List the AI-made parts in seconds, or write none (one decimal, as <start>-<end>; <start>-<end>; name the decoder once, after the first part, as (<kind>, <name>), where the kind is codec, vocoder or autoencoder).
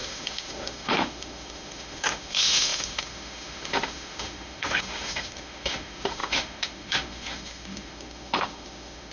0.0-9.1 (autoencoder, DAC-VAE)